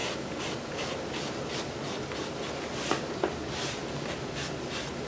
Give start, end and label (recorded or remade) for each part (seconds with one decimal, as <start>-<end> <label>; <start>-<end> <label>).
0.0-5.1 recorded